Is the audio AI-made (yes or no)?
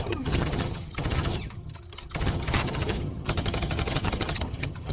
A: yes